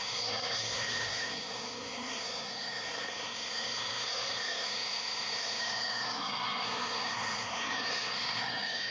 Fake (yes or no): yes